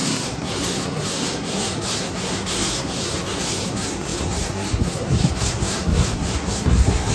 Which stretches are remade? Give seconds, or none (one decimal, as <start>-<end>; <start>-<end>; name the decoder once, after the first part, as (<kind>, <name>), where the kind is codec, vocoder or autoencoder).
0.0-7.1 (codec, SNAC)